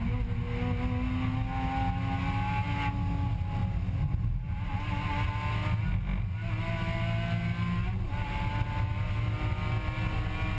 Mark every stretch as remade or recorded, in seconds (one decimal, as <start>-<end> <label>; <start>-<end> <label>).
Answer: 0.0-10.6 recorded